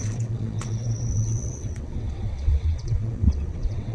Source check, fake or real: fake